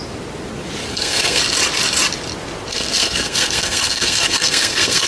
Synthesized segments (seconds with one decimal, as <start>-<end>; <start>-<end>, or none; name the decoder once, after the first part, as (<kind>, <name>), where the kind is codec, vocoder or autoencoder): 0.9-1.4 (codec, SNAC); 2.7-5.1